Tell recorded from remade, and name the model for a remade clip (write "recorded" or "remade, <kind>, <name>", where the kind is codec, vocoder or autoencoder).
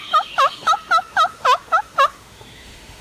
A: remade, autoencoder, DAC-VAE